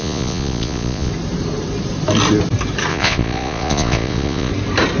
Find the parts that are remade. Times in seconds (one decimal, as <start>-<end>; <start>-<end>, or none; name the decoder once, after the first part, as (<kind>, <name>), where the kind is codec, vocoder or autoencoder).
0.0-1.1 (vocoder, Vocos); 2.9-4.5